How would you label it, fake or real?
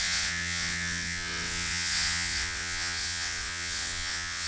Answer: fake